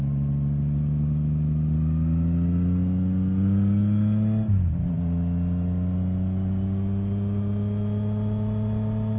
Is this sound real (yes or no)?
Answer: yes